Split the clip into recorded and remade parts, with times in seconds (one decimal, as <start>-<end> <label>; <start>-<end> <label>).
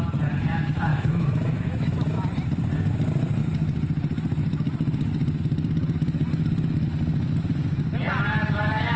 0.0-0.9 recorded; 0.9-2.2 remade; 2.2-9.0 recorded